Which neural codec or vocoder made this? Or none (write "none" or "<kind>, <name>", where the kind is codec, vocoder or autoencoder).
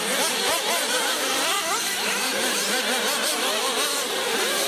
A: vocoder, BigVGAN v2